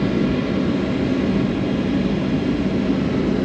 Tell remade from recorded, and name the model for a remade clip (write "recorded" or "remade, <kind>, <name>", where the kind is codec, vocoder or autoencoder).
recorded